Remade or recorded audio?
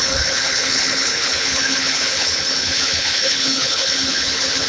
remade